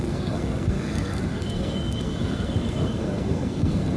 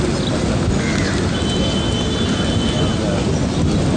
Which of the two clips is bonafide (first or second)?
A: second